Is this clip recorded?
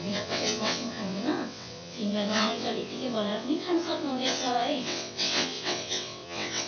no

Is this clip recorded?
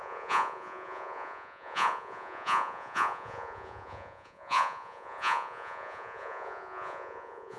no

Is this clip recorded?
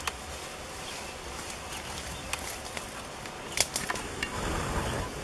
yes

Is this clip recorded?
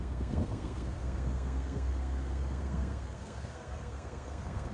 no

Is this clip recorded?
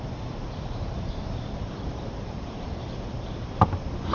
no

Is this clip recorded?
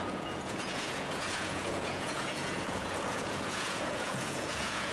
no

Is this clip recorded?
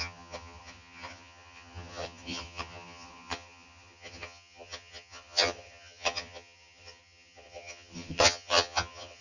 no